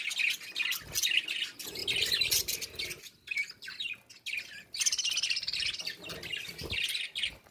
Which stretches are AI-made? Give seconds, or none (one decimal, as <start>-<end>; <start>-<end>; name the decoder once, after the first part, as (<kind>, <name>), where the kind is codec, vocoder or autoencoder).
none